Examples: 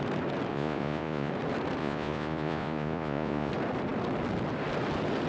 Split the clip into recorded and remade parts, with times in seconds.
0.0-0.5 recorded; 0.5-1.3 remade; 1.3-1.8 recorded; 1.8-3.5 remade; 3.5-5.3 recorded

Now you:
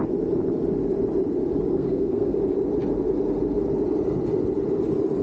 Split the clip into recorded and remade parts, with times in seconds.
0.0-1.7 recorded; 1.7-2.4 remade; 2.4-5.2 recorded

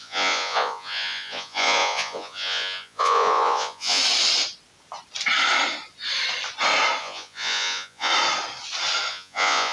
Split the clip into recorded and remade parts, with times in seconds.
0.0-4.0 remade; 4.0-7.0 recorded; 7.0-8.1 remade; 8.1-9.1 recorded; 9.1-9.7 remade

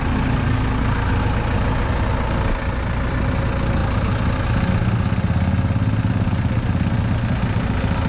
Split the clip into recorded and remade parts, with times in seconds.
0.0-8.1 recorded

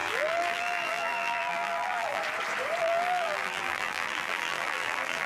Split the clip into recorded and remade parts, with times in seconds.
0.0-2.2 remade; 2.2-2.8 recorded; 2.8-5.3 remade

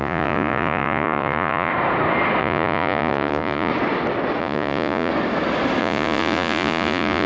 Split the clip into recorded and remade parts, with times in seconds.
0.0-1.7 remade; 1.7-2.4 recorded; 2.4-3.7 remade; 3.7-4.4 recorded; 4.4-5.1 remade; 5.1-5.8 recorded; 5.8-7.3 remade

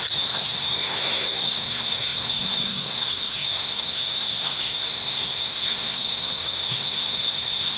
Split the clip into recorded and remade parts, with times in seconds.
0.0-7.8 remade

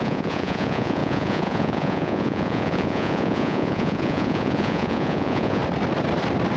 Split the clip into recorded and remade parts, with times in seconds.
0.0-5.6 remade; 5.6-6.6 recorded